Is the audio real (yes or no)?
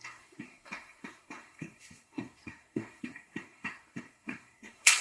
no